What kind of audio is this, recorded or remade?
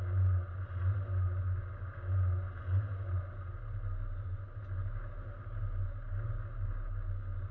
recorded